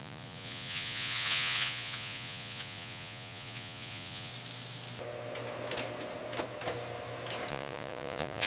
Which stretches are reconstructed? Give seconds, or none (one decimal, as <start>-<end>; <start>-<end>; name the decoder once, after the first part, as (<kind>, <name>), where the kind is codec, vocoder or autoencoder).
0.0-4.3 (vocoder, Vocos); 7.5-8.5